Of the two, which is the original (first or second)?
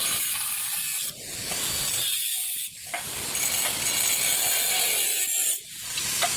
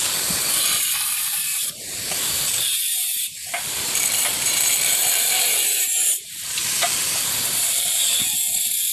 first